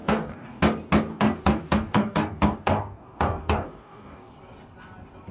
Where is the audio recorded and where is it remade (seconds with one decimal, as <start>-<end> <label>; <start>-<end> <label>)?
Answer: 0.0-0.6 remade; 0.6-1.1 recorded; 1.1-4.3 remade; 4.3-5.3 recorded